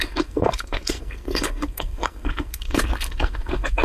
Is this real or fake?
fake